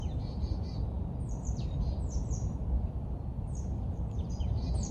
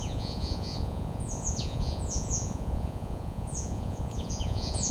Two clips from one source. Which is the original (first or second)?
first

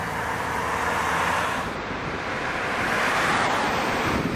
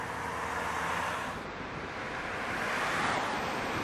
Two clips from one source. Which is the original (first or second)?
second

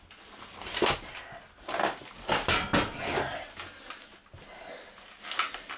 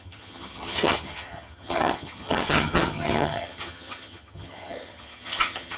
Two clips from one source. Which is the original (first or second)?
first